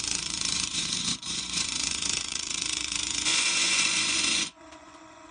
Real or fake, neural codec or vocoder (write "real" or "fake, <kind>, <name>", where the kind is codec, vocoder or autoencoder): fake, vocoder, Vocos